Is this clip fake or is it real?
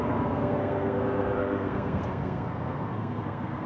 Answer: fake